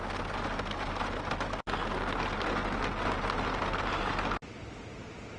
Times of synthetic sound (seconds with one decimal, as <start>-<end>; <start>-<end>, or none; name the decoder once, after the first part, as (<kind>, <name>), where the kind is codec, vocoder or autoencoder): none